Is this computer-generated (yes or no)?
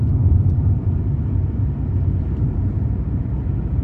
yes